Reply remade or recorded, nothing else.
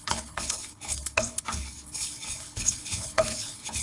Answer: remade